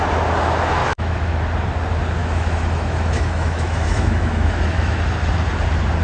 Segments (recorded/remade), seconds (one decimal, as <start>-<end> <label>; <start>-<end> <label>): 0.0-0.8 recorded; 0.8-1.4 remade; 1.4-2.2 recorded; 2.2-5.0 remade; 5.0-6.0 recorded